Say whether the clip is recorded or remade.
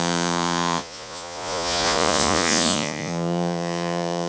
remade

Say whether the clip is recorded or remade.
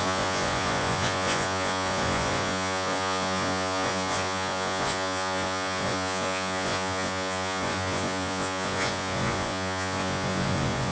remade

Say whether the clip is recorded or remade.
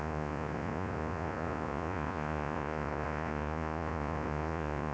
remade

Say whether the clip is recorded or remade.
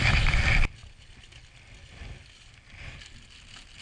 recorded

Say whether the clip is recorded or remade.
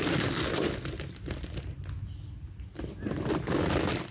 recorded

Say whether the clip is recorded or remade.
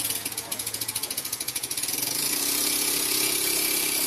remade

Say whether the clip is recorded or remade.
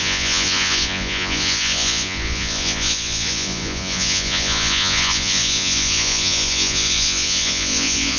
remade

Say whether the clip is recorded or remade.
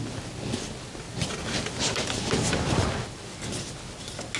recorded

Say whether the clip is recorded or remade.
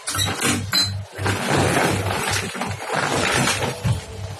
recorded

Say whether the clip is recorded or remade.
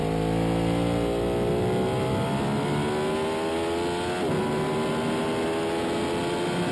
recorded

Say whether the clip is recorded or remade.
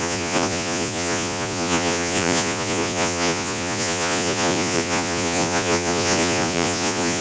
remade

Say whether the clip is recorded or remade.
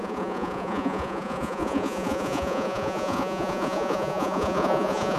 remade